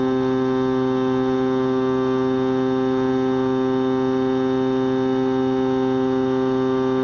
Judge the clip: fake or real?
real